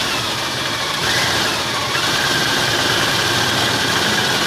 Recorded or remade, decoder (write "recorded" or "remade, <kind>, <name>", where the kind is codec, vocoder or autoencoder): recorded